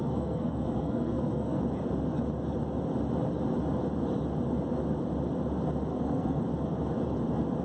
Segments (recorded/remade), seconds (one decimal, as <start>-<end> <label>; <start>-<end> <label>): 0.0-1.6 remade; 1.6-5.9 recorded; 5.9-6.4 remade; 6.4-7.6 recorded